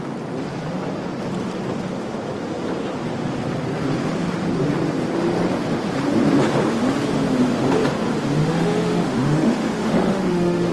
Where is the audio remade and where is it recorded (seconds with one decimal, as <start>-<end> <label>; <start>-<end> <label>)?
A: 0.0-8.4 recorded; 8.4-10.7 remade